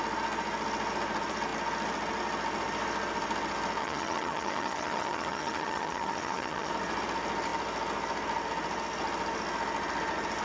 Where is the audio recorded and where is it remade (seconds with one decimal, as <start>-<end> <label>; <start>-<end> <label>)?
0.0-3.8 recorded; 3.8-6.7 remade; 6.7-10.4 recorded